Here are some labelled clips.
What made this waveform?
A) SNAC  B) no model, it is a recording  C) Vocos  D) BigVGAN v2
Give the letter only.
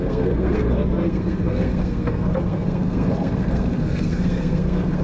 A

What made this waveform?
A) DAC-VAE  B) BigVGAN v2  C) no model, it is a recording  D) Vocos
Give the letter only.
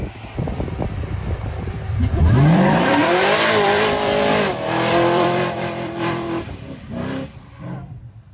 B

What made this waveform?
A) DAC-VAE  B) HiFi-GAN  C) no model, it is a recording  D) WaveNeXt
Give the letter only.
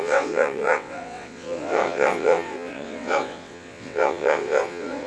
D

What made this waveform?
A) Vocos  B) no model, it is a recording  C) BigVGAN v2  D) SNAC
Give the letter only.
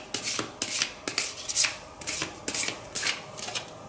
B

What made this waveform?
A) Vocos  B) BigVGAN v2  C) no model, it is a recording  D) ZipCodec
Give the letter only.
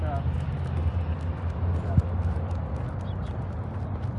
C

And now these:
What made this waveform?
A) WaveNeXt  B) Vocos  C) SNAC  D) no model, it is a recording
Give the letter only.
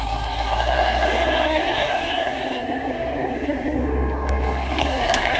C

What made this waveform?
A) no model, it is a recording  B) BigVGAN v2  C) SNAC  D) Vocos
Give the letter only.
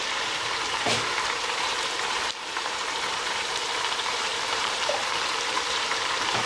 B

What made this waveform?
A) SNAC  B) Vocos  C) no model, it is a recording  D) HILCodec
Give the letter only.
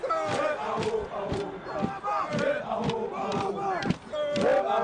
C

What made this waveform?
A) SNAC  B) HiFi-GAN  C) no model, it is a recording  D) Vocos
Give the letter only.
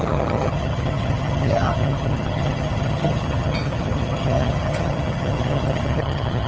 B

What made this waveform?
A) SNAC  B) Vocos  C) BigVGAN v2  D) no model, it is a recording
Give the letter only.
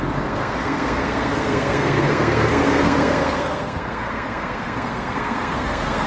A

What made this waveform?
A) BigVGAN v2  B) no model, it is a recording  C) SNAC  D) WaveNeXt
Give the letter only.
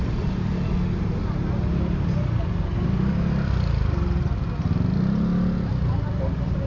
B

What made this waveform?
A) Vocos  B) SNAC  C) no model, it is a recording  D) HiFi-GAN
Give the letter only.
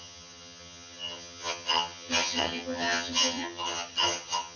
D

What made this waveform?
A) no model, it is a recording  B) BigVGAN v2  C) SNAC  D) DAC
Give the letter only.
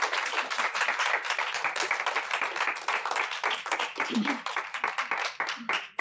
B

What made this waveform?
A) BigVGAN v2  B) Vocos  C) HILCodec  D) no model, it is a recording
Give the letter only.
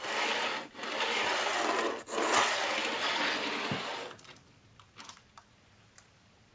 D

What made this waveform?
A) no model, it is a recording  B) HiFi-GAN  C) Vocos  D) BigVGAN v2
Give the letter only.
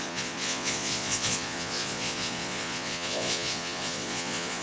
C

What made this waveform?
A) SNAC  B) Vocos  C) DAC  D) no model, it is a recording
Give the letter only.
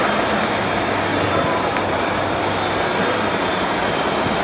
D